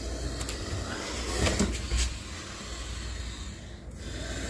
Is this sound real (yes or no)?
yes